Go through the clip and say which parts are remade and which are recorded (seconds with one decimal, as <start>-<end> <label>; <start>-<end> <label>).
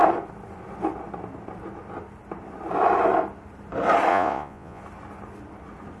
0.0-4.1 recorded; 4.1-4.8 remade; 4.8-6.0 recorded